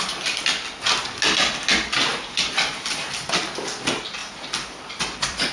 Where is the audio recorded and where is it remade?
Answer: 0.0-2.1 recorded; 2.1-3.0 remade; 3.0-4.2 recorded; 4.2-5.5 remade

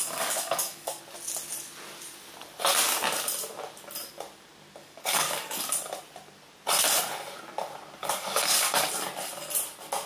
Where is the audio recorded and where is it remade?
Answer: 0.0-1.0 remade; 1.0-4.8 recorded; 4.8-5.6 remade; 5.6-8.0 recorded; 8.0-8.9 remade; 8.9-10.1 recorded